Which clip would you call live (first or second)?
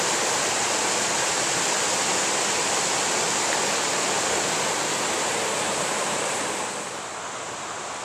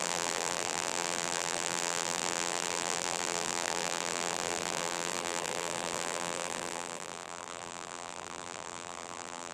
first